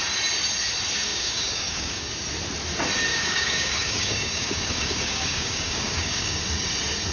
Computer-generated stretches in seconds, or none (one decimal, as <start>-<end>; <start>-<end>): 1.1-2.1; 3.1-6.4